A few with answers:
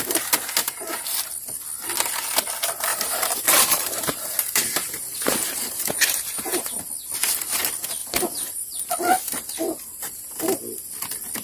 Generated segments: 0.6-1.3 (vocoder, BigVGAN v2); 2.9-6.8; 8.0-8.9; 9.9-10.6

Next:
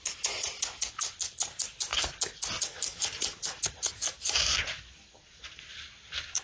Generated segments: none